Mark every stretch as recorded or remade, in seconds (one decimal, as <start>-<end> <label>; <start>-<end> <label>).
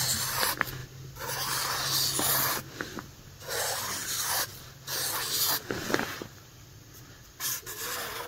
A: 0.0-8.3 recorded